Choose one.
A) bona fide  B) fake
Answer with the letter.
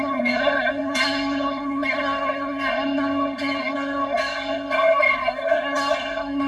B